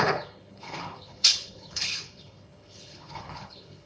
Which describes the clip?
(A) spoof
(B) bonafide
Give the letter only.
A